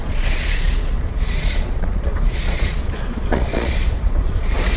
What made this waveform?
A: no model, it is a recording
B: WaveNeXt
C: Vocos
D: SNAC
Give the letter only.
C